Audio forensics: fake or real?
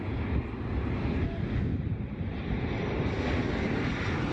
real